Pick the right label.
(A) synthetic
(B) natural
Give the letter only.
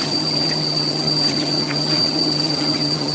A